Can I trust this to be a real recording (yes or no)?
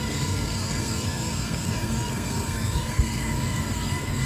no